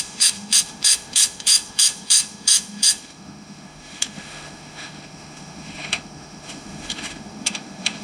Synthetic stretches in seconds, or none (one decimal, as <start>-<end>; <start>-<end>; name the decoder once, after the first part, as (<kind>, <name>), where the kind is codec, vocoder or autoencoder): 0.0-8.0 (autoencoder, DAC-VAE)